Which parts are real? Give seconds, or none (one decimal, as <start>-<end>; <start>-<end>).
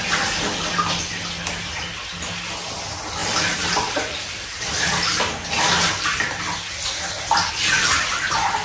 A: 0.0-3.2; 4.7-8.6